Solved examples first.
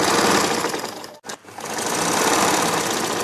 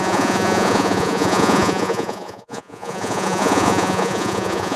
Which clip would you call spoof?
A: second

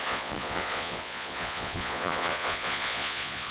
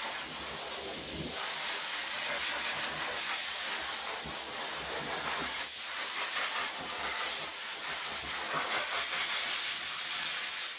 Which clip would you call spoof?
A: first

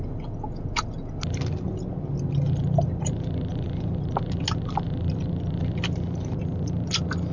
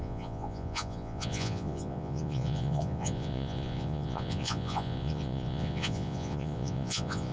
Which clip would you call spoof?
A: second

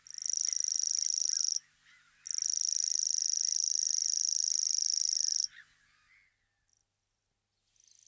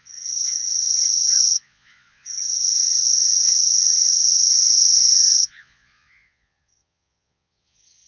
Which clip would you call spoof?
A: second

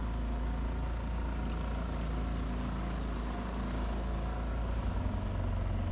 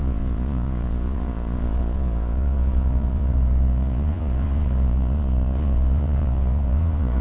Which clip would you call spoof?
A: second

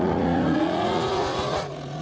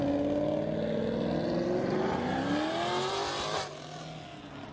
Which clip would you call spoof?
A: first